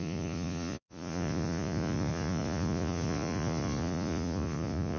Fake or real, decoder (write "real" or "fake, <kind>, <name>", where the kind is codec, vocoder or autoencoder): fake, vocoder, Vocos